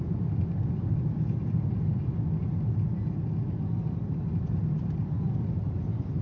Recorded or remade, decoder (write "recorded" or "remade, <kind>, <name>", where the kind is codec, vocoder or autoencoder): recorded